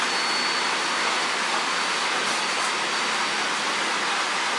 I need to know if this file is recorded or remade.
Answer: recorded